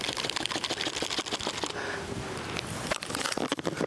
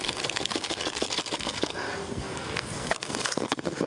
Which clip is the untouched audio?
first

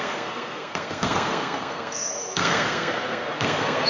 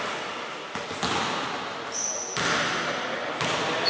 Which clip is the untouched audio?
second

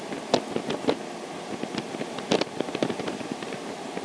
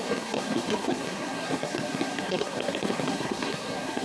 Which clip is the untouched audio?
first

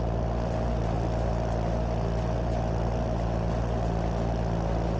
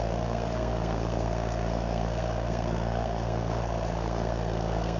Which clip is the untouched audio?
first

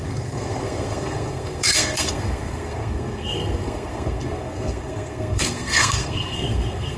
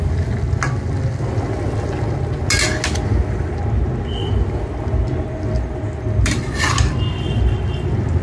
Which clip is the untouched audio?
second